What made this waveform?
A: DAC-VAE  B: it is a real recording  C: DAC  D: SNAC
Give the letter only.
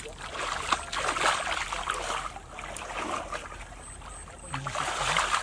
B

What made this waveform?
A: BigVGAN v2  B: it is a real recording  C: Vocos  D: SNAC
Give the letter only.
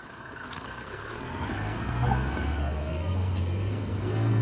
D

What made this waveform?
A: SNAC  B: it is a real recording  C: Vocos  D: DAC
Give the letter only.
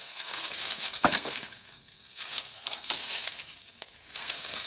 A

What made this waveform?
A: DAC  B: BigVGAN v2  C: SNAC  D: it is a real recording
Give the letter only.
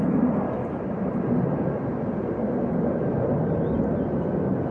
D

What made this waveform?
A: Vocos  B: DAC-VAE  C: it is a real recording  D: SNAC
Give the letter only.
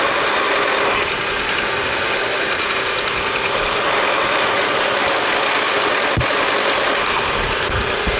C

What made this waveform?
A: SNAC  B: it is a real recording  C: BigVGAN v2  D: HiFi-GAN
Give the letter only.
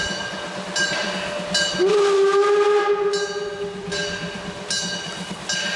B